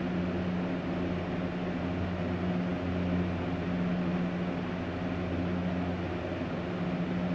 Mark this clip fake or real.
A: real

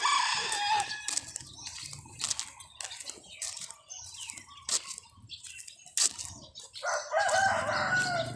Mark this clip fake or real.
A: real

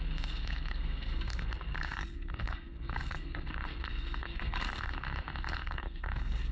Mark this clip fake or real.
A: fake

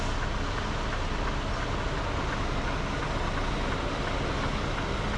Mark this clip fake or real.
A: real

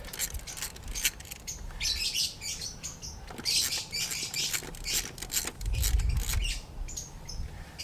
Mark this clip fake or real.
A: real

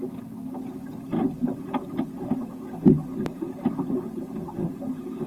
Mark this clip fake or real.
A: real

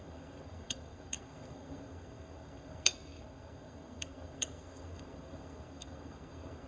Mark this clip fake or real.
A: fake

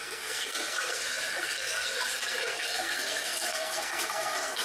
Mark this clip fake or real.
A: fake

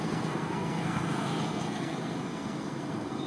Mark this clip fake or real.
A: fake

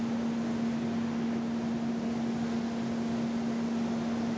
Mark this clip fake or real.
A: real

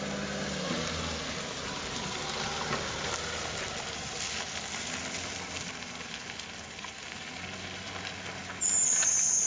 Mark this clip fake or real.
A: real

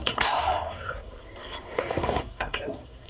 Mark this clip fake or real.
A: fake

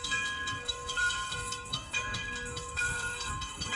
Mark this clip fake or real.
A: fake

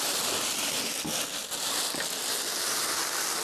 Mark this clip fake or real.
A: real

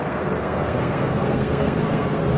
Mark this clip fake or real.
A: fake